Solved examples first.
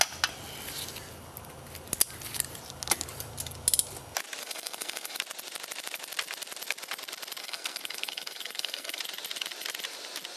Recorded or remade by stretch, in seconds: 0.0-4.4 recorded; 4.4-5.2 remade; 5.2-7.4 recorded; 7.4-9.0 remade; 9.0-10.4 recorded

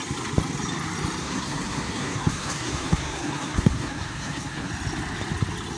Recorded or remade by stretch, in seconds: 0.0-1.2 recorded; 1.2-4.7 remade; 4.7-5.8 recorded

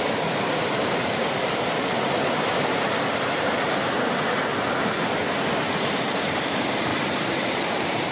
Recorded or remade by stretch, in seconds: 0.0-1.2 remade; 1.2-3.7 recorded; 3.7-4.5 remade; 4.5-5.3 recorded; 5.3-8.1 remade

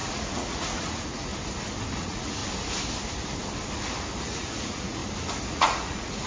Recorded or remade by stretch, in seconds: 0.0-1.3 remade; 1.3-2.0 recorded; 2.0-2.4 remade; 2.4-4.2 recorded; 4.2-5.0 remade; 5.0-5.5 recorded; 5.5-6.3 remade

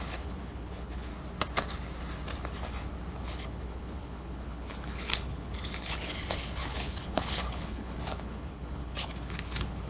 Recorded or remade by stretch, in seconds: 0.0-1.1 remade; 1.1-3.2 recorded; 3.2-9.9 remade

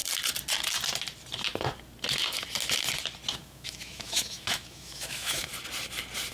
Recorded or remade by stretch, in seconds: 0.0-3.3 recorded; 3.3-5.5 remade; 5.5-6.3 recorded

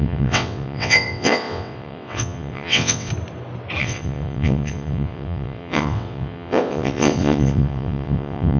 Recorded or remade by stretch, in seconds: 0.0-3.1 remade; 3.1-3.8 recorded; 3.8-8.6 remade

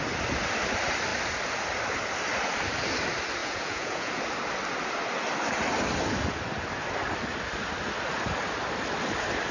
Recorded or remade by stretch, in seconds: 0.0-3.4 recorded; 3.4-4.2 remade; 4.2-9.5 recorded